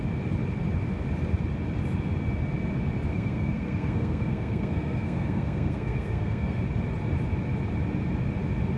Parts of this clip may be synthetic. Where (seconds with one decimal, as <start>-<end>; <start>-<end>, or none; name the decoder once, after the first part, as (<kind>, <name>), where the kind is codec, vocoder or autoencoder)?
3.1-6.6 (codec, SNAC)

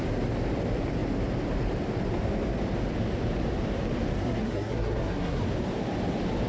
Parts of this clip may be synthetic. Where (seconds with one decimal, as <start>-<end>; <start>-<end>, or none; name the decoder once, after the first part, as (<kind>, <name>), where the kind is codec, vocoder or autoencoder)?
4.1-5.4 (codec, SNAC)

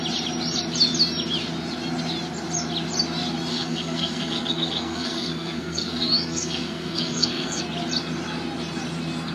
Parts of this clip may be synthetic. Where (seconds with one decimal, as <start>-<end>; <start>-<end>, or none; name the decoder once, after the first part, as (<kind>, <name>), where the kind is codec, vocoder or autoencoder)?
3.5-7.6 (codec, SNAC)

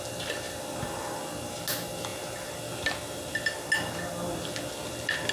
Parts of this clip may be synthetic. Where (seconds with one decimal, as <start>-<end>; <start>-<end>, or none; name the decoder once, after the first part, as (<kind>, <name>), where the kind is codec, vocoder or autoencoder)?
none